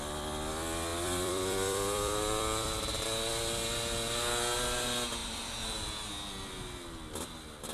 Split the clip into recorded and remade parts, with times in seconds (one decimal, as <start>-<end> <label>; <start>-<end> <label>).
0.0-0.9 recorded; 0.9-3.0 remade; 3.0-5.2 recorded; 5.2-6.1 remade; 6.1-7.7 recorded